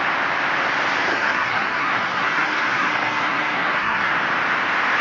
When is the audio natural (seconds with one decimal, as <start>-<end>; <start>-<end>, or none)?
0.0-1.1; 4.1-5.0